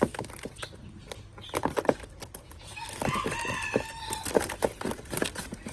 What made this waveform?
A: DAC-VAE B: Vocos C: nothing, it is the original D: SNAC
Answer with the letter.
C